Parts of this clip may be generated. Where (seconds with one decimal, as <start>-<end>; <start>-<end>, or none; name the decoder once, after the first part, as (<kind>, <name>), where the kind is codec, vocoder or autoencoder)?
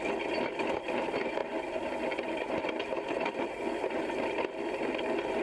none